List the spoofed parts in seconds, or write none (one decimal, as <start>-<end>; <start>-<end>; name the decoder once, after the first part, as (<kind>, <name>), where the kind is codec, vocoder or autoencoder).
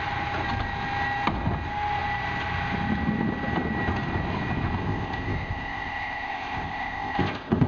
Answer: 4.8-7.7 (codec, ZipCodec)